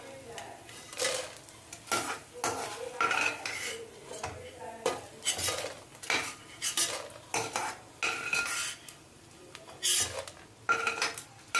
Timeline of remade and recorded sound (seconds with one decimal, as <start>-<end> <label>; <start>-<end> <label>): 0.0-11.6 recorded